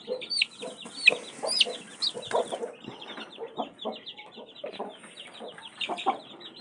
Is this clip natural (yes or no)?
yes